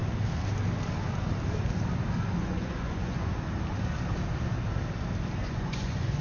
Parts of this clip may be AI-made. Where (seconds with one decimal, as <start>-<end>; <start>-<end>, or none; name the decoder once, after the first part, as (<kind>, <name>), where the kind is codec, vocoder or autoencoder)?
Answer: 2.4-3.3 (vocoder, Vocos); 5.4-6.2